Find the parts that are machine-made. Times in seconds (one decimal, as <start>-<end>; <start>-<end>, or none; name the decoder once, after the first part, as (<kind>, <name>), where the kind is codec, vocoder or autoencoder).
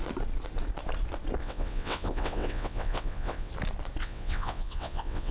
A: 1.4-3.5 (vocoder, WaveNeXt); 4.0-5.3